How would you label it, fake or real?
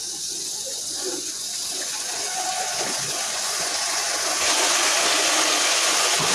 fake